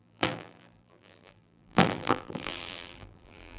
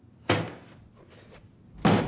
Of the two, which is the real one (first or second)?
second